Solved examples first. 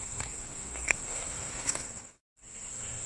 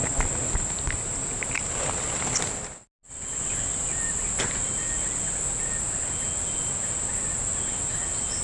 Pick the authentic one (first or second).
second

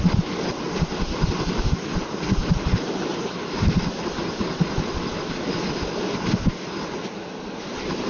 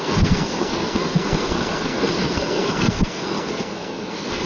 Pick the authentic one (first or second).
first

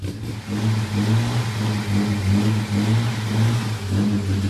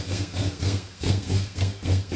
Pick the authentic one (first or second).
first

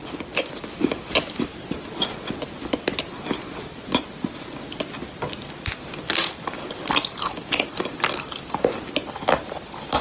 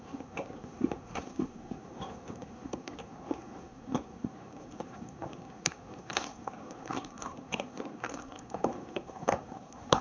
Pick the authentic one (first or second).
first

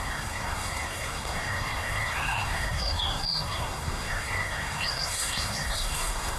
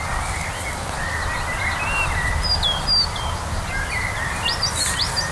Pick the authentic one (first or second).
second